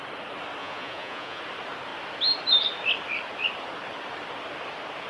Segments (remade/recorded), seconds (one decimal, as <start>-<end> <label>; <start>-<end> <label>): 0.0-0.6 recorded; 0.6-1.4 remade; 1.4-5.1 recorded